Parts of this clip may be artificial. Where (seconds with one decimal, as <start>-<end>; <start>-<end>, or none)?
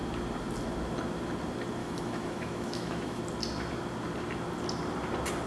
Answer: 1.8-3.2